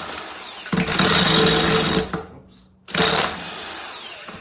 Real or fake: real